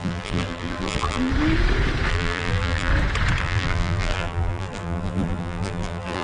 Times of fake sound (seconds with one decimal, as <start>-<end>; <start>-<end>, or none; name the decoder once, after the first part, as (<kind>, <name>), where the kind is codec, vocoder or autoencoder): 0.0-1.3 (vocoder, BigVGAN v2); 2.1-2.9; 3.4-6.2